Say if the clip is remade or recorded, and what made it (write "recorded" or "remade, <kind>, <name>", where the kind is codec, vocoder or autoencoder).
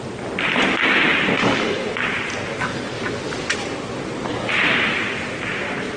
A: recorded